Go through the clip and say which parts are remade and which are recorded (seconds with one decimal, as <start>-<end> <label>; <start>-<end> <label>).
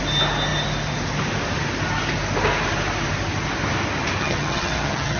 0.0-4.2 recorded; 4.2-5.2 remade